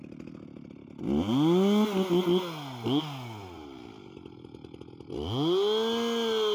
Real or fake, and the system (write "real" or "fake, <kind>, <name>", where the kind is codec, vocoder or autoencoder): real